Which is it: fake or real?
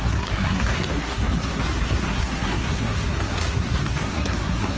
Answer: fake